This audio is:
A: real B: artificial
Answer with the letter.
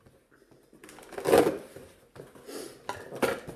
A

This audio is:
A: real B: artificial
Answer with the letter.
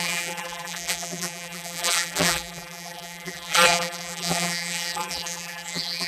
B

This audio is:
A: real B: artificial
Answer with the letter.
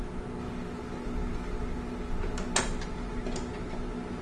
A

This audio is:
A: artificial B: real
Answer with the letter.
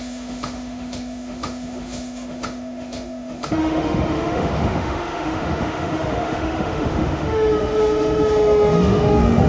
A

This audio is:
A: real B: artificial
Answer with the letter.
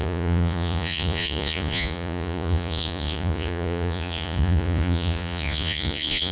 B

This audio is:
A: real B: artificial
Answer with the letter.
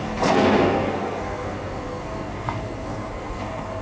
B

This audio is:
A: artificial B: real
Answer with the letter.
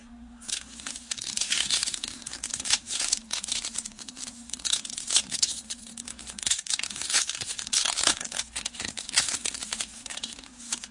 A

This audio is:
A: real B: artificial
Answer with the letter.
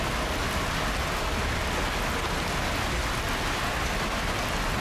A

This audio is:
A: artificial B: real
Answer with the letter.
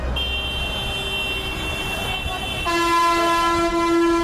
B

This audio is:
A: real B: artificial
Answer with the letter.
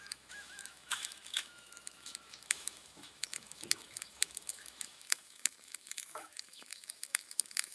B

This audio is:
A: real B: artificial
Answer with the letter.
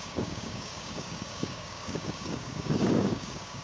B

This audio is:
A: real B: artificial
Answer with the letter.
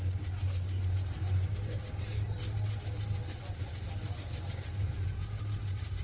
A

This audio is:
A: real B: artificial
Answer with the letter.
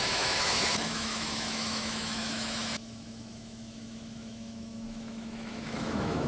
B